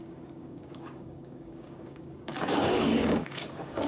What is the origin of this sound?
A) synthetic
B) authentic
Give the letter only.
A